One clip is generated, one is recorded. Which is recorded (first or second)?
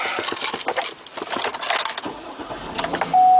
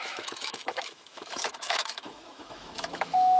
first